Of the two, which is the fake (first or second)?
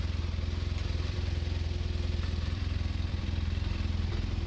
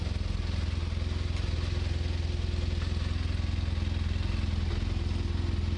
first